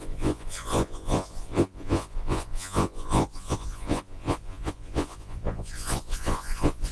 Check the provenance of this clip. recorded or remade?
remade